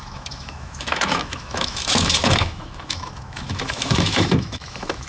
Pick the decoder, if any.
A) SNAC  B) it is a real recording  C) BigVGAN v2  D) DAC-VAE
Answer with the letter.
D